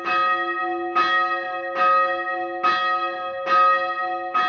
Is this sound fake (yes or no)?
no